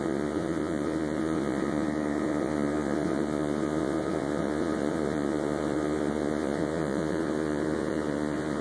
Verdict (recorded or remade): remade